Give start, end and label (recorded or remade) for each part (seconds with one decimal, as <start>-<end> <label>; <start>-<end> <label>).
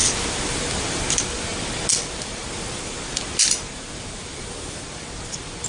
0.0-5.7 recorded